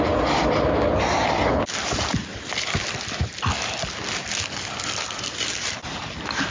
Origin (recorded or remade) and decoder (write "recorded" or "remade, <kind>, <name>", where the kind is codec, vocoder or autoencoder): recorded